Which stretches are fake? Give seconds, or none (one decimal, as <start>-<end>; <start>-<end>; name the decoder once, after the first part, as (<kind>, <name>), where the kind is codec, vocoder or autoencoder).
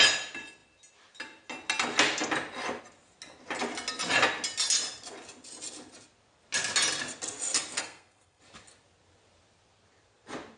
7.8-8.4 (codec, SNAC)